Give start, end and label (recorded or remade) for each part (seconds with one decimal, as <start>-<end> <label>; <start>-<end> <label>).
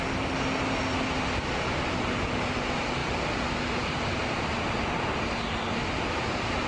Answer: 0.0-6.7 recorded